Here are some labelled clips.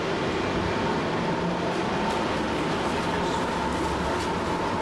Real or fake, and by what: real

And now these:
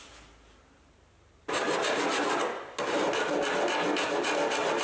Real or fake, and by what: real